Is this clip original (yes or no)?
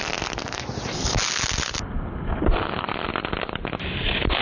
yes